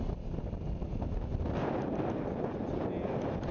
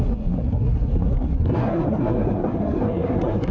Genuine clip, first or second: first